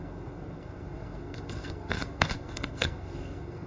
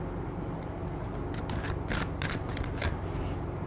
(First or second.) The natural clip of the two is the second